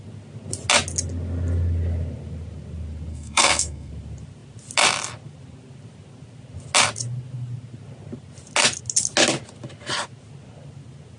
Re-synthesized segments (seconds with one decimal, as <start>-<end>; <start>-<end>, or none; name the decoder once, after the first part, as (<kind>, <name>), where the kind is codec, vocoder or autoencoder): 3.1-3.9 (codec, SNAC)